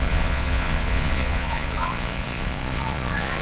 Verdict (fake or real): fake